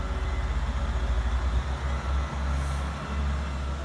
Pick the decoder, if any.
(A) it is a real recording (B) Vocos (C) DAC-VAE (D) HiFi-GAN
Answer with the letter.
A